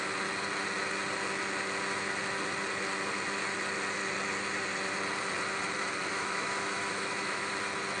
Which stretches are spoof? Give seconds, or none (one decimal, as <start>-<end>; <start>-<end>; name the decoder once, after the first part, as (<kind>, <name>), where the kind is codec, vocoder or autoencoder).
6.1-7.5 (autoencoder, DAC-VAE)